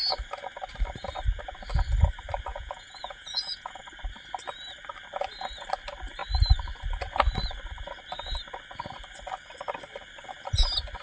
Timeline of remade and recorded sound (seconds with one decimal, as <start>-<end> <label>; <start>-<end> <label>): 0.0-2.5 recorded; 2.5-3.8 remade; 3.8-11.0 recorded